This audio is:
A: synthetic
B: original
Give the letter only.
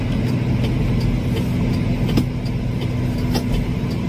B